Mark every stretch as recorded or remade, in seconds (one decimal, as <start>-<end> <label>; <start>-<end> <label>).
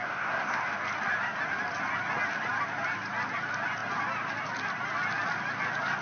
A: 0.0-0.6 remade; 0.6-6.0 recorded